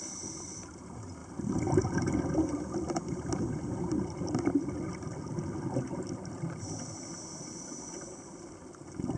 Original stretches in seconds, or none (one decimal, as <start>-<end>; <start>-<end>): 0.0-9.2